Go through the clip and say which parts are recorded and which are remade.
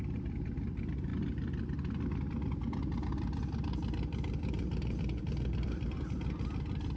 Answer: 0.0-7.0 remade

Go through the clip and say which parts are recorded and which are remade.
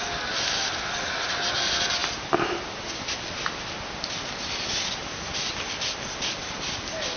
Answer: 0.0-7.2 recorded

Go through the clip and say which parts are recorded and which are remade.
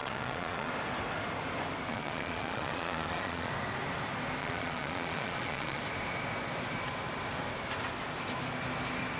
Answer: 0.0-0.7 remade; 0.7-1.9 recorded; 1.9-3.5 remade; 3.5-4.4 recorded; 4.4-5.8 remade; 5.8-9.2 recorded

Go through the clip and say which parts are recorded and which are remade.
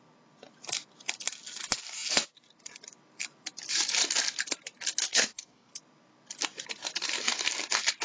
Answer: 0.0-5.0 recorded; 5.0-5.7 remade; 5.7-8.0 recorded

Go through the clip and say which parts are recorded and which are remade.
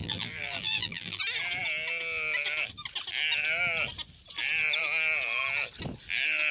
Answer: 0.0-1.2 remade; 1.2-6.5 recorded